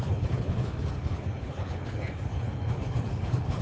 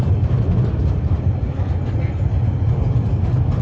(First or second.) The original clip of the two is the second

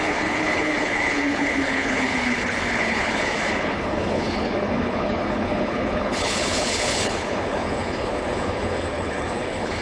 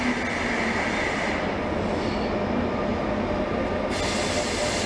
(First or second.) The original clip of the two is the second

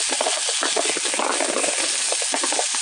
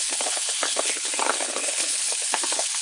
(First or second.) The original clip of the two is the first